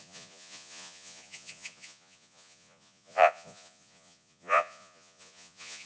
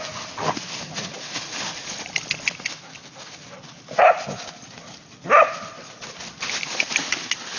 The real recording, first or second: second